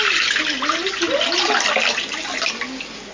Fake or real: real